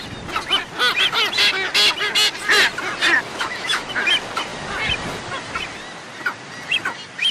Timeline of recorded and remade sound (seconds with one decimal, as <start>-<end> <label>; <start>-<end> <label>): 0.0-3.3 recorded; 3.3-3.9 remade; 3.9-7.3 recorded